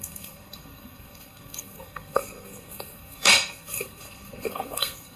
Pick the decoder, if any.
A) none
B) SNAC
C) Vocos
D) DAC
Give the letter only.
B